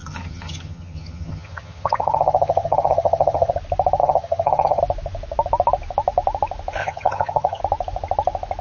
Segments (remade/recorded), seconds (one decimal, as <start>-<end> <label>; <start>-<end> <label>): 0.0-3.5 remade; 3.5-4.0 recorded; 4.0-4.8 remade; 4.8-6.8 recorded; 6.8-7.6 remade; 7.6-8.6 recorded